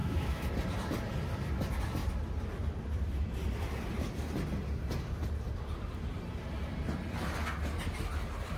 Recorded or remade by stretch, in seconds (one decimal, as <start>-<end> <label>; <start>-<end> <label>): 0.0-0.5 remade; 0.5-8.6 recorded